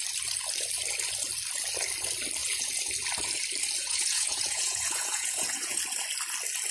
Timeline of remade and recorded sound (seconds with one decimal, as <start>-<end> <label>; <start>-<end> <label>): 0.0-2.4 recorded; 2.4-2.9 remade; 2.9-3.8 recorded; 3.8-5.8 remade; 5.8-6.7 recorded